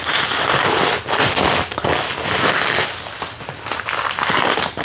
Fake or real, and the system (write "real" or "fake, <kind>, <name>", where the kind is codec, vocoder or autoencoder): real